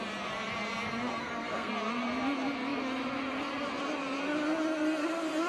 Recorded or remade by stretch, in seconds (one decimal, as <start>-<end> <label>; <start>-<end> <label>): 0.0-1.2 recorded; 1.2-1.7 remade; 1.7-5.5 recorded